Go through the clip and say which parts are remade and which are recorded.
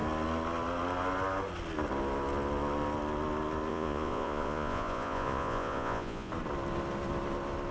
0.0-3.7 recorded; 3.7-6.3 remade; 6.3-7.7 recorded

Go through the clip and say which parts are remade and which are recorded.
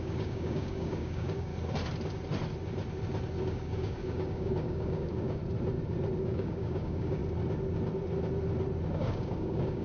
0.0-1.5 remade; 1.5-3.4 recorded; 3.4-5.4 remade; 5.4-6.2 recorded; 6.2-7.2 remade; 7.2-8.9 recorded; 8.9-9.8 remade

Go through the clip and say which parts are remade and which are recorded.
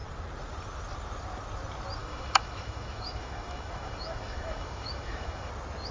0.0-2.0 recorded; 2.0-5.5 remade; 5.5-5.9 recorded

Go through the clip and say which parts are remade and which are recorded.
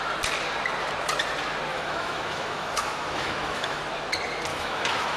0.0-1.7 recorded; 1.7-3.8 remade; 3.8-4.5 recorded; 4.5-5.2 remade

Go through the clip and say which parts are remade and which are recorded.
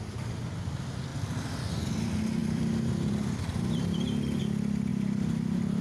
0.0-1.1 recorded; 1.1-1.7 remade; 1.7-2.4 recorded; 2.4-4.4 remade; 4.4-4.9 recorded; 4.9-5.8 remade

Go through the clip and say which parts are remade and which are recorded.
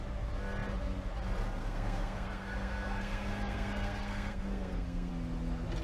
0.0-1.6 recorded; 1.6-5.1 remade; 5.1-5.8 recorded